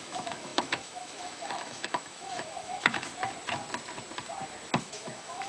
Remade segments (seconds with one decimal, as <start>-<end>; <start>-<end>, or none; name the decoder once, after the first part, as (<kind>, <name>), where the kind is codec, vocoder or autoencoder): 0.0-3.1 (autoencoder, DAC-VAE); 4.8-5.5